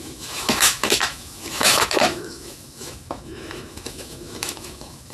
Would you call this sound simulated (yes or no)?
yes